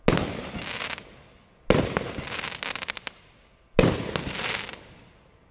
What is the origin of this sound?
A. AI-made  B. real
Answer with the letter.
B